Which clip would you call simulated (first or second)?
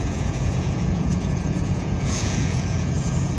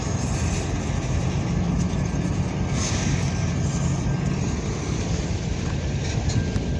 first